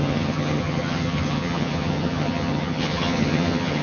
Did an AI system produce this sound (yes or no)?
yes